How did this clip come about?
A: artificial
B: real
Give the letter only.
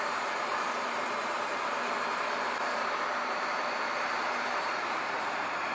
A